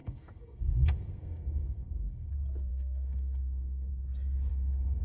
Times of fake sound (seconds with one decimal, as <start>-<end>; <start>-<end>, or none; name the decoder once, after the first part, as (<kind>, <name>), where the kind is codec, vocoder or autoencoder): 0.0-2.3 (codec, SNAC); 2.7-3.9; 4.5-5.0

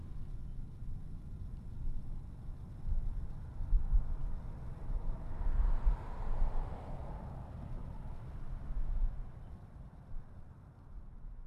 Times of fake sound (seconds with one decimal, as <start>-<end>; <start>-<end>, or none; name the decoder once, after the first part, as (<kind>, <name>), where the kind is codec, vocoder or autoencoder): none

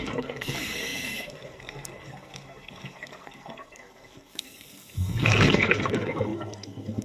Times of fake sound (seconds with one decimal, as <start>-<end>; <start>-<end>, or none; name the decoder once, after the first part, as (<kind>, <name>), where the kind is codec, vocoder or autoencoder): 0.0-7.0 (codec, SNAC)

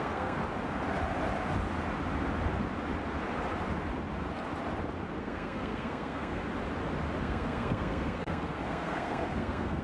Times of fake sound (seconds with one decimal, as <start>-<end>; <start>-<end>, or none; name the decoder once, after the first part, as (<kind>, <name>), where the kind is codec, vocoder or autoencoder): 0.0-0.4 (codec, SNAC); 5.2-6.4; 7.2-9.8